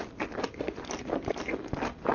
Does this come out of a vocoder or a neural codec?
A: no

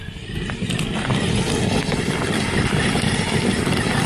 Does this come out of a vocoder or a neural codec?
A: no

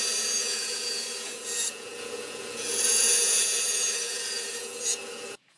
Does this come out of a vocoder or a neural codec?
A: yes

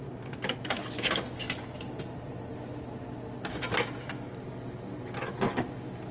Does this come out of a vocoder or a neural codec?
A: no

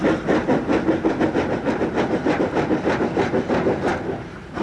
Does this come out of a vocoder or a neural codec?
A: no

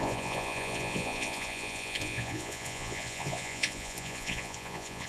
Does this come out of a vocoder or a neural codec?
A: yes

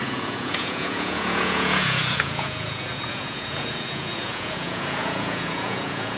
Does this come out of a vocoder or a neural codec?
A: yes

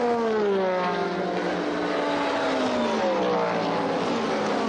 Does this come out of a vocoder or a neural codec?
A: no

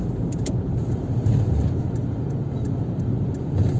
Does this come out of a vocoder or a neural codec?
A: no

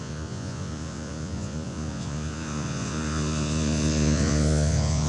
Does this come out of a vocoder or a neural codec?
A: yes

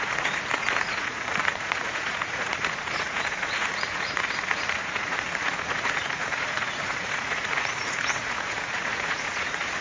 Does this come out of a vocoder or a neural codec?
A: yes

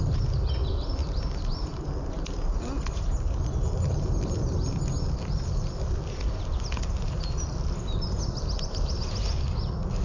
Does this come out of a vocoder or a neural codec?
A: no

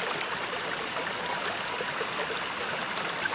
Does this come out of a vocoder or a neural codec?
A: no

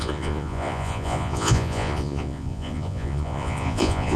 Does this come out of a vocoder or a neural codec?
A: yes